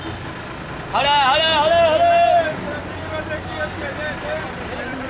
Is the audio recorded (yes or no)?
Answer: yes